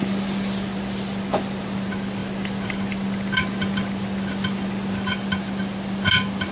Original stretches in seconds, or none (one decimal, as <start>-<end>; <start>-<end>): 0.0-6.5